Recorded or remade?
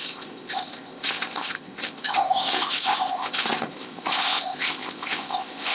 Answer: remade